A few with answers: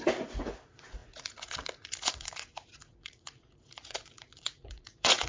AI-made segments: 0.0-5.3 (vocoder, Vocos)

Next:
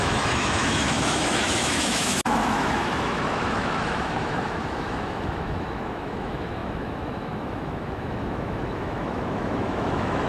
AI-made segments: 0.0-10.3 (autoencoder, DAC-VAE)

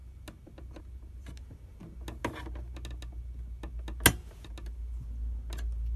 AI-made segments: none

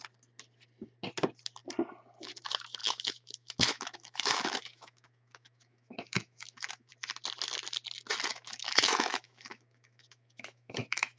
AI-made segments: 2.8-6.9 (autoencoder, DAC-VAE); 8.3-11.2

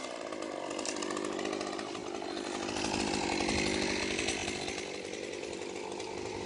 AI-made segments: none

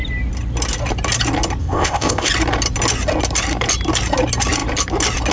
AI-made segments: 1.6-2.3 (codec, ZipCodec)